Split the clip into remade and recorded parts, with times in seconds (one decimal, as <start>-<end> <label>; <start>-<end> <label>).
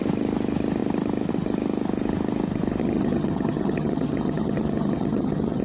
0.0-2.8 recorded; 2.8-5.6 remade